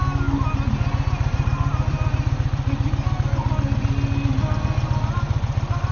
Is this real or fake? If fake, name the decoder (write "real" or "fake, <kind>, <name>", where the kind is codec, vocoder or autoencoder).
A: real